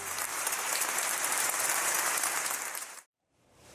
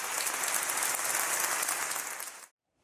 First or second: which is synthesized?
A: first